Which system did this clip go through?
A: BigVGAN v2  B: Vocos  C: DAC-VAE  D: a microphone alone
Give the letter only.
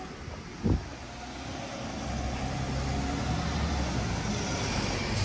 D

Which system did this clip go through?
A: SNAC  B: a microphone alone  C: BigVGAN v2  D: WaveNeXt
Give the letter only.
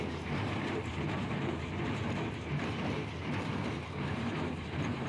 C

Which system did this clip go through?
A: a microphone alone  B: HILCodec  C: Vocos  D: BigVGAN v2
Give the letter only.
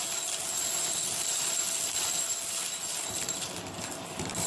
A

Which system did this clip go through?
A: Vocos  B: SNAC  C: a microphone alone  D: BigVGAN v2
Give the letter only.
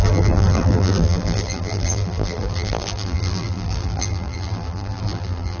D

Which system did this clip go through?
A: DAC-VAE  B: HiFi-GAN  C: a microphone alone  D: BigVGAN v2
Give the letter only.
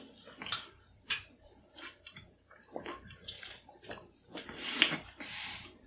D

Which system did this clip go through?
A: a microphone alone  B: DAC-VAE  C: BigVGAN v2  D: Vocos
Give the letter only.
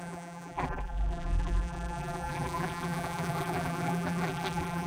C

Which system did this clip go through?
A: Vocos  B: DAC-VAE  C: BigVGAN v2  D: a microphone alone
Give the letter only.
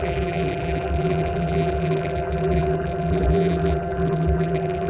C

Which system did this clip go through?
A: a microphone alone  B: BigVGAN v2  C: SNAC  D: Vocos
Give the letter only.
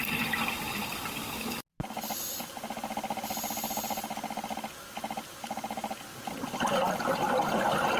A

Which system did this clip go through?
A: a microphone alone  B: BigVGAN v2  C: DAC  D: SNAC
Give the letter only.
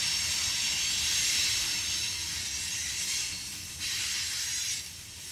A